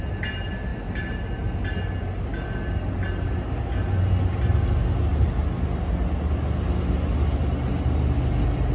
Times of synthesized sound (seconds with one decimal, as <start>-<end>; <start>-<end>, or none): none